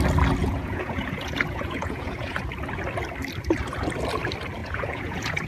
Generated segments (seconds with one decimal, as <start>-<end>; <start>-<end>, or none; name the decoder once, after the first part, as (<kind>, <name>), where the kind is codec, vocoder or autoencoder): 0.4-2.4 (vocoder, Vocos); 4.6-5.5